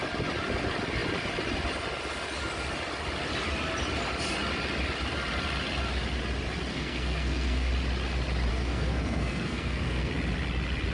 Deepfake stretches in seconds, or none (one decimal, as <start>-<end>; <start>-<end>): 6.7-7.7; 8.5-10.1